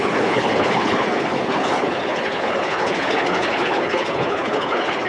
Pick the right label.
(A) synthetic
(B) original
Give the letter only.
A